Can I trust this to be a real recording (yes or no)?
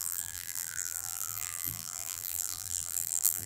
no